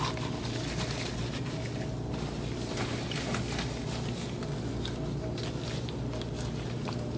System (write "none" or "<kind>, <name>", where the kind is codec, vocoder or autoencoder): none